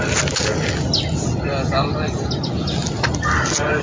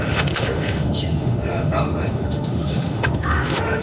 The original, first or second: first